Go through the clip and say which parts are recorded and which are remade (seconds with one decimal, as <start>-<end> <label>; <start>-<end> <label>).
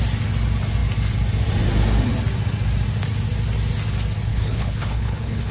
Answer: 0.0-4.3 recorded; 4.3-5.5 remade